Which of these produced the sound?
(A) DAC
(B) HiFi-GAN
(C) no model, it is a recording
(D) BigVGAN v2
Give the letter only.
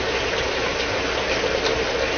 C